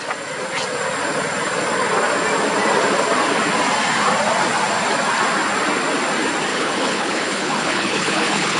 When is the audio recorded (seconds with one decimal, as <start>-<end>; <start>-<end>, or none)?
0.0-6.5